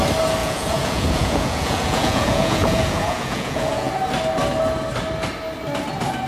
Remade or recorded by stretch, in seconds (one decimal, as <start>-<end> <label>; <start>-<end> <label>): 0.0-0.4 recorded; 0.4-3.9 remade; 3.9-6.3 recorded